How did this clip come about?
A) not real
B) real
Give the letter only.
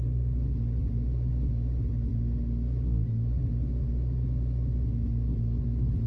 B